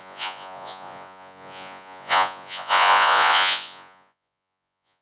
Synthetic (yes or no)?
yes